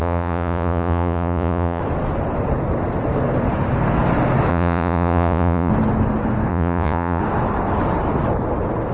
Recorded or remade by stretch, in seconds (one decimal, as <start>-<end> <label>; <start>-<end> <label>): 0.0-1.8 remade; 1.8-4.5 recorded; 4.5-5.7 remade; 5.7-6.5 recorded; 6.5-7.2 remade; 7.2-8.9 recorded